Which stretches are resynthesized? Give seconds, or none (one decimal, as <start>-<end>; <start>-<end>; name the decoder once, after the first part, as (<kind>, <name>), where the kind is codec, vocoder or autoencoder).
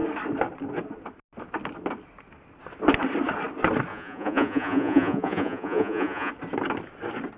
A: 3.9-6.3 (vocoder, Vocos)